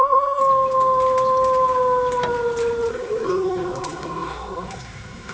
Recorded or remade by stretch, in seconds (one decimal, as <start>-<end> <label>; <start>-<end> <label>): 0.0-0.4 remade; 0.4-2.9 recorded; 2.9-5.3 remade